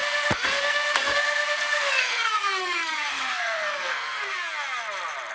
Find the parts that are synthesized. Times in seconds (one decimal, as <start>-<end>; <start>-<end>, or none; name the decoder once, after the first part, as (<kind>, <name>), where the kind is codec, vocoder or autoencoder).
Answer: 0.0-4.2 (codec, SNAC)

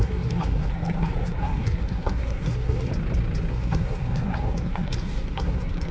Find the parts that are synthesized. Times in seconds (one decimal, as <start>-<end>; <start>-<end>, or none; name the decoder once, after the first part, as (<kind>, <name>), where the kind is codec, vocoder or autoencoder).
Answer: 0.0-2.9 (codec, SNAC); 3.5-5.9

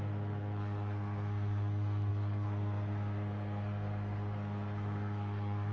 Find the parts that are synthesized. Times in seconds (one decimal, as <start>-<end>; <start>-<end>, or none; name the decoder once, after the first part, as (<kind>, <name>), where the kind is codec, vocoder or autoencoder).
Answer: 0.0-5.7 (codec, SNAC)

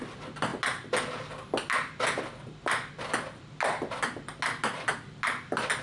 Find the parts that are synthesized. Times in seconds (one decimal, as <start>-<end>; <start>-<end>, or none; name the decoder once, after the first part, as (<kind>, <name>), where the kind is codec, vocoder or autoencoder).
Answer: none

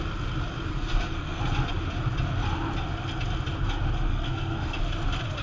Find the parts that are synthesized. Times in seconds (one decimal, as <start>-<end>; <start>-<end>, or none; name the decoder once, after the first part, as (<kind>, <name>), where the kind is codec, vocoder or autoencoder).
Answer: 0.7-1.4 (codec, SNAC); 4.1-4.8

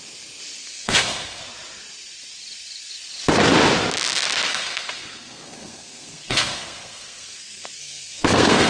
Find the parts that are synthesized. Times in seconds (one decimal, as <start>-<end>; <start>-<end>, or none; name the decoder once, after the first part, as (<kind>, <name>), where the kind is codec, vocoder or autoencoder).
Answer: 0.6-1.4 (codec, SNAC); 4.5-8.7

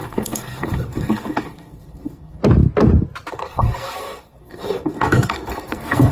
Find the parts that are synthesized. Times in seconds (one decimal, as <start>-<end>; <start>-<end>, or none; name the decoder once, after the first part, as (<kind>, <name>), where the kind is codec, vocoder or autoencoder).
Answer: 0.0-2.4 (codec, SNAC); 3.3-6.1

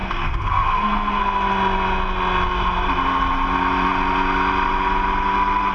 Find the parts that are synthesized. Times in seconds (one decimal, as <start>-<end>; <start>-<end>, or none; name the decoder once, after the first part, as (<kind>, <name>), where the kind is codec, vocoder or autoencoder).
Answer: 0.0-1.2 (codec, SNAC)